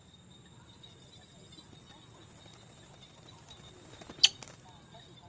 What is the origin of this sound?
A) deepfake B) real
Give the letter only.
B